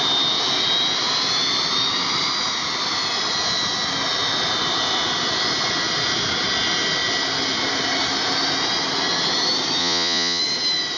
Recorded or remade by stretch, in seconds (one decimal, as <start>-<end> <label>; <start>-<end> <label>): 0.0-9.8 recorded; 9.8-10.4 remade; 10.4-11.0 recorded